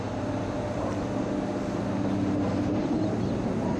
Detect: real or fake real